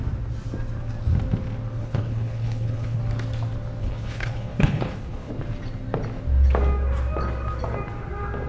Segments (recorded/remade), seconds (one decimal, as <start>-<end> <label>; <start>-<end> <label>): 0.0-1.8 recorded; 1.8-3.0 remade; 3.0-3.8 recorded; 3.8-5.3 remade; 5.3-8.5 recorded